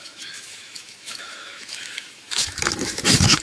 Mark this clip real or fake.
fake